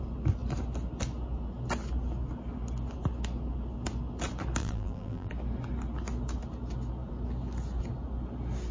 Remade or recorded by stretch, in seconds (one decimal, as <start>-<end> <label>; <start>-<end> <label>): 0.0-4.6 recorded; 4.6-5.3 remade; 5.3-8.7 recorded